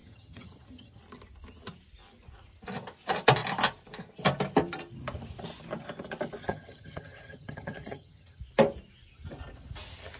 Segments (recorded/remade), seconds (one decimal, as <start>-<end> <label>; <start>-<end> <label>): 0.0-1.0 remade; 1.0-6.4 recorded; 6.4-8.4 remade; 8.4-10.2 recorded